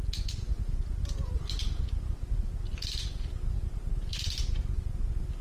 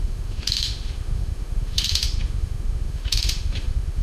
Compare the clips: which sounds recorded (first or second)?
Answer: first